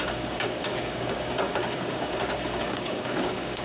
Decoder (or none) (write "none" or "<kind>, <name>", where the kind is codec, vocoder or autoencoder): codec, DAC